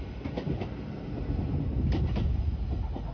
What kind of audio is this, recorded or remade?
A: recorded